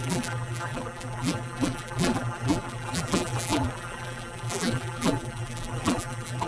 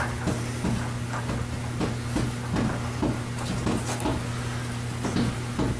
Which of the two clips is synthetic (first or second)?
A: first